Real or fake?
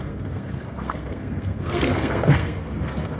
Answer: fake